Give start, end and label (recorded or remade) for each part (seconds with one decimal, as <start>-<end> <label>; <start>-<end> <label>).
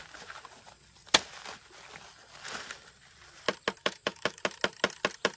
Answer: 0.0-3.8 recorded; 3.8-4.4 remade; 4.4-5.4 recorded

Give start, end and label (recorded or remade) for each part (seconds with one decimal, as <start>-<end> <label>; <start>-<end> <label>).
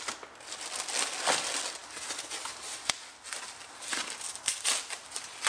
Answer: 0.0-5.5 recorded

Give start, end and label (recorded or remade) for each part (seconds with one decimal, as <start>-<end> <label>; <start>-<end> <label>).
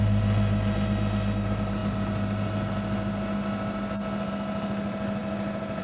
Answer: 0.0-5.8 recorded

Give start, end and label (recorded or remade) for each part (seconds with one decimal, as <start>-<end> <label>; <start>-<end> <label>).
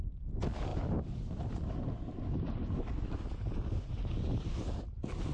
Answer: 0.0-5.3 recorded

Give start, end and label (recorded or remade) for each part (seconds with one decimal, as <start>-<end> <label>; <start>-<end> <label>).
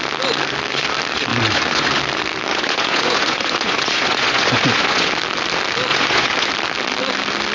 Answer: 0.0-1.3 recorded; 1.3-2.0 remade; 2.0-2.5 recorded; 2.5-5.1 remade; 5.1-5.9 recorded; 5.9-6.5 remade; 6.5-7.5 recorded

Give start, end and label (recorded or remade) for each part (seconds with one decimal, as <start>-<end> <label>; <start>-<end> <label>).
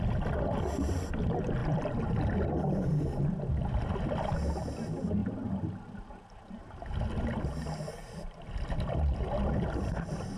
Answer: 0.0-1.6 recorded; 1.6-2.6 remade; 2.6-8.0 recorded; 8.0-8.5 remade; 8.5-10.4 recorded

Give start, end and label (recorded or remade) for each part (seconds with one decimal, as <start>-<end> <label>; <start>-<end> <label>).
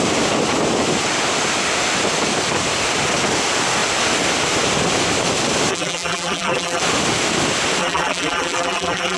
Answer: 0.0-5.7 recorded; 5.7-6.8 remade; 6.8-7.8 recorded; 7.8-9.2 remade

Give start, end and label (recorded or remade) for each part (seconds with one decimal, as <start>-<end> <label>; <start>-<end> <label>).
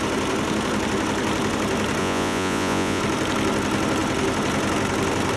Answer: 0.0-2.0 recorded; 2.0-3.0 remade; 3.0-5.4 recorded